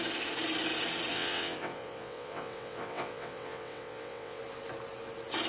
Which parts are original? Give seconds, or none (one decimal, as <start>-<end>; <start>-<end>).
0.0-1.1; 4.4-5.5